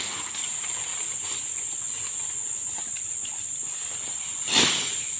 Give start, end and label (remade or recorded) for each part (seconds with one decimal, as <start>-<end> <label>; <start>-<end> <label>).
0.0-5.2 recorded